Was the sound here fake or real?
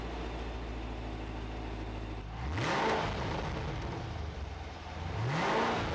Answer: real